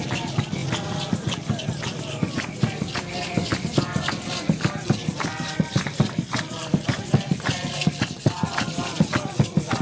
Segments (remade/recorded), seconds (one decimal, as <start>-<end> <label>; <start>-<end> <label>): 0.0-9.8 recorded